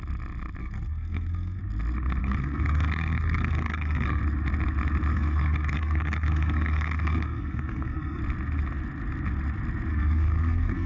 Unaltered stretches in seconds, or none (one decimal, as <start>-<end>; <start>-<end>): 0.0-0.6; 1.6-2.2; 4.2-5.1; 8.2-9.9